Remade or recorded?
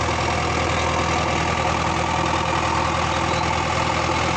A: recorded